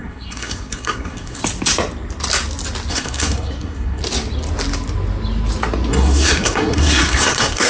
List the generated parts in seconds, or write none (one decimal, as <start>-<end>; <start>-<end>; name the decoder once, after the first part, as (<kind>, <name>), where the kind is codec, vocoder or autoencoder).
0.0-1.4 (codec, SNAC); 2.9-4.0; 5.9-7.7